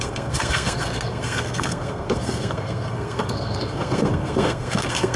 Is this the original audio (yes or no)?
no